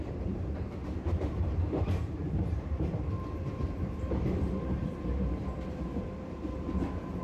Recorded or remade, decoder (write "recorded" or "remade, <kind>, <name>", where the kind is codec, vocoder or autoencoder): remade, vocoder, BigVGAN v2